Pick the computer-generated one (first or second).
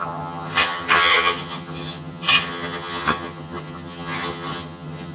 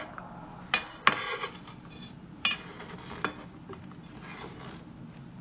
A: first